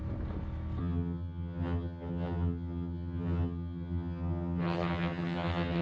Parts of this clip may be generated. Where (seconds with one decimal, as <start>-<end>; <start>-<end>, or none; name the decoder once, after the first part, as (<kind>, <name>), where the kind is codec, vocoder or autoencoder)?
0.8-5.8 (vocoder, HiFi-GAN)